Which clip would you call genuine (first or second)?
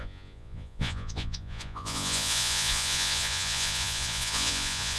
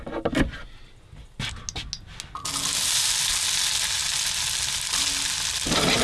second